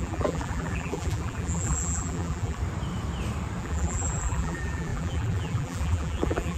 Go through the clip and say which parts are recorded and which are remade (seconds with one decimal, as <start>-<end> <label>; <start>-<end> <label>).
0.0-2.6 remade; 2.6-3.6 recorded; 3.6-6.6 remade